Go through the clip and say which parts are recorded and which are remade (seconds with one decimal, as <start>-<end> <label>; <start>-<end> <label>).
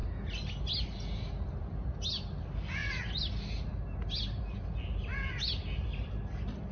0.0-6.7 recorded